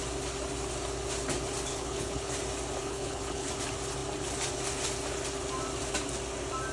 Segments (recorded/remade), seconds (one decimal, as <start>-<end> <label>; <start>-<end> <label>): 0.0-1.7 recorded; 1.7-2.3 remade; 2.3-2.8 recorded; 2.8-3.5 remade; 3.5-6.7 recorded